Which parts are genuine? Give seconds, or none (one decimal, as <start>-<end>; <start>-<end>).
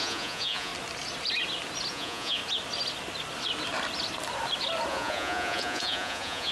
0.7-1.9; 2.4-4.9